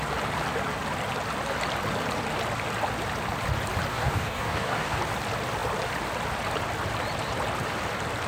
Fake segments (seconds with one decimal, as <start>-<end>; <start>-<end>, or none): 3.9-5.0

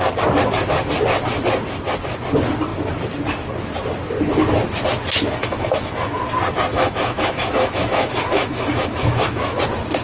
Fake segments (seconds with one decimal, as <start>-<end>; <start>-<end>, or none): 5.4-6.2; 6.7-9.6

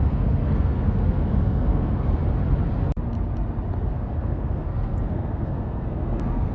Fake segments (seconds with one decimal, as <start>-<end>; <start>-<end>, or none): 0.0-2.2; 3.9-6.5

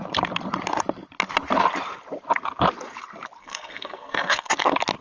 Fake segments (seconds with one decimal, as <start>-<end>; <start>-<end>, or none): 3.4-4.5

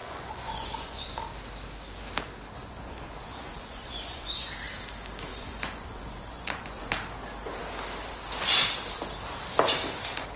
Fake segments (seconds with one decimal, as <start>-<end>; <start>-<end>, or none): 0.0-1.2; 2.6-4.5; 5.3-6.9

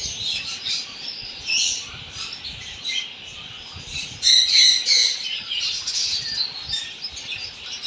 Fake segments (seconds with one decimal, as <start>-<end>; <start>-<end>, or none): none